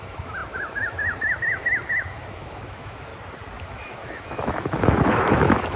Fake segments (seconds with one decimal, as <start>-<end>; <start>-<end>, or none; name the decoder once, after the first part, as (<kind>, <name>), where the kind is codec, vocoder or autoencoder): 0.0-3.1 (autoencoder, DAC-VAE); 3.6-5.8